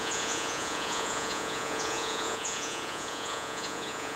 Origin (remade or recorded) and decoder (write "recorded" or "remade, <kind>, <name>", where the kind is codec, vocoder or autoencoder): remade, vocoder, Vocos